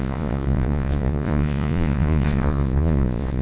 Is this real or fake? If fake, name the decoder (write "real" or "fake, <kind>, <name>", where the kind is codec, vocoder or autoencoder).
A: fake, vocoder, Vocos